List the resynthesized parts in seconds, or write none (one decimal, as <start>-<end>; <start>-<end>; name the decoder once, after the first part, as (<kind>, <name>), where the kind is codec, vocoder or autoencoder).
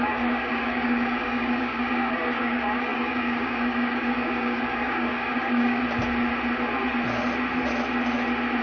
0.0-5.8 (codec, DAC)